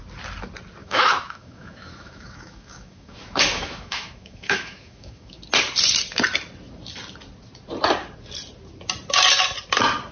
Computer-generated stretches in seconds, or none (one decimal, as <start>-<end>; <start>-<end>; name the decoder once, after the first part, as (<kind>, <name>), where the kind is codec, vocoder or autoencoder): 0.8-5.4 (autoencoder, DAC-VAE)